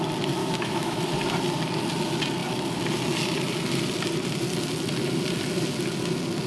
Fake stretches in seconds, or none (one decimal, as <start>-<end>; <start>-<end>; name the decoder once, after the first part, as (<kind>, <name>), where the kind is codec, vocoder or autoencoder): 0.4-1.0 (autoencoder, DAC-VAE)